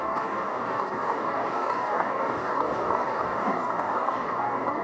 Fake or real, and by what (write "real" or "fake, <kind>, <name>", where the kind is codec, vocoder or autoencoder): fake, codec, DAC